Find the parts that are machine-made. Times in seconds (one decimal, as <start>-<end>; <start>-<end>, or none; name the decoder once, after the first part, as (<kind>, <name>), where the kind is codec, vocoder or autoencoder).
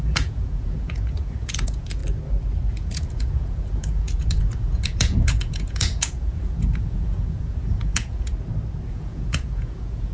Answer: 0.0-2.0 (vocoder, Vocos); 2.7-8.3; 8.9-10.1